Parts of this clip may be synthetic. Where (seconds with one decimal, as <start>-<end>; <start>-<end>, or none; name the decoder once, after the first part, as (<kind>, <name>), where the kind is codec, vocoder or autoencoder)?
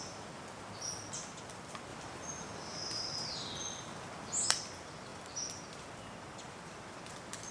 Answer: none